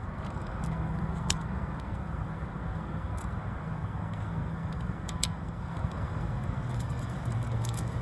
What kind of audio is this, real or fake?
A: fake